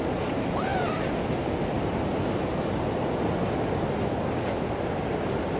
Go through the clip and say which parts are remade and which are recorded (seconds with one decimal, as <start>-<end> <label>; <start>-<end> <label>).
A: 0.0-5.6 recorded